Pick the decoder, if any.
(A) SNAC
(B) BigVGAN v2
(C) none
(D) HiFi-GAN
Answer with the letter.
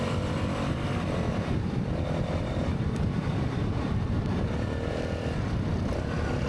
B